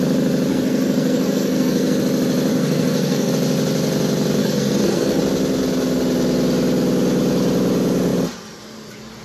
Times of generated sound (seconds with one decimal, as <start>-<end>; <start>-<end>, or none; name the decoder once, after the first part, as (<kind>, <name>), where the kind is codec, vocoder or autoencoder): 0.5-2.0 (codec, SNAC); 2.5-3.3; 4.4-5.2